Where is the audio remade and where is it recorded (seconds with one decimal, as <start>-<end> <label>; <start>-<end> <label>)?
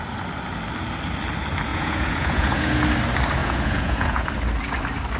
0.0-1.7 recorded; 1.7-2.8 remade; 2.8-3.4 recorded; 3.4-4.3 remade; 4.3-5.2 recorded